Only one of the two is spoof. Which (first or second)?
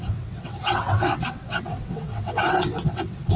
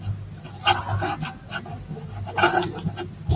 first